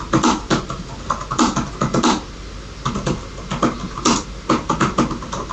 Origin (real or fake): real